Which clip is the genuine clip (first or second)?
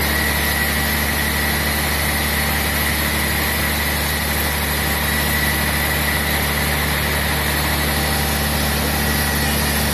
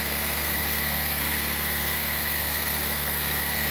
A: first